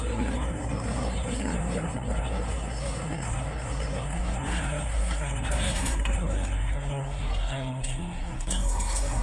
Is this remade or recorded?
remade